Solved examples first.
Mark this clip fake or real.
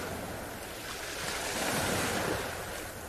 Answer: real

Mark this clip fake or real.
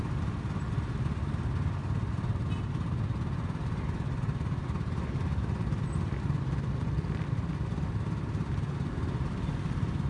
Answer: real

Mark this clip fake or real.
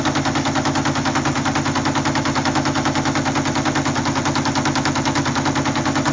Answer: real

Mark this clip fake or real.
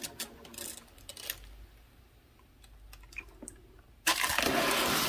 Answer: real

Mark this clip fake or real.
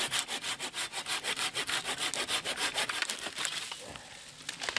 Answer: real